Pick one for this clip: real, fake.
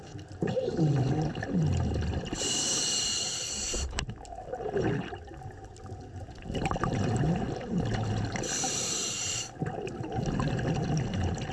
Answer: real